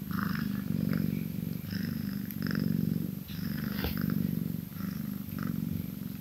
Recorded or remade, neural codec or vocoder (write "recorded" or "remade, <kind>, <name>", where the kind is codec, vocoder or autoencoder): recorded